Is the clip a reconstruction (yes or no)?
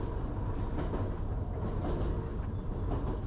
no